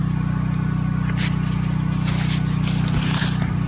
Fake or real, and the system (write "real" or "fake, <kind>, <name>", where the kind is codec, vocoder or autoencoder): real